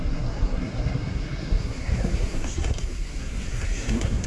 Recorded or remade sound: remade